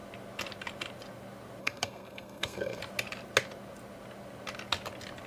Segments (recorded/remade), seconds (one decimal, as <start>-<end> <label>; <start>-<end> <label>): 0.0-1.6 recorded; 1.6-2.8 remade; 2.8-5.3 recorded